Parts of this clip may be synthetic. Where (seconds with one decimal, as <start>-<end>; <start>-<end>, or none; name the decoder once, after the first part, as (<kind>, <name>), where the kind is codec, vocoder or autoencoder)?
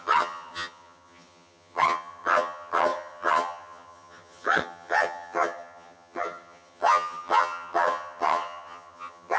0.0-9.4 (vocoder, HiFi-GAN)